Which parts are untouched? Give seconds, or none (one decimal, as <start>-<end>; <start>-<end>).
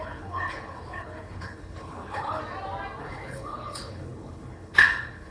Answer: 2.4-3.0